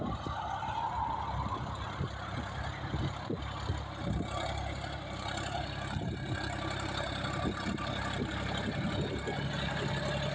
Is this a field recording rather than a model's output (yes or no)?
yes